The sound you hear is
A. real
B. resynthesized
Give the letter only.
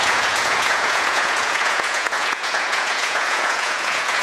B